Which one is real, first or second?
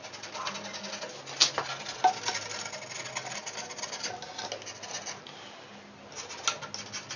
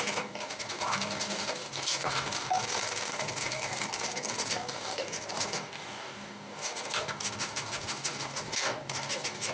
first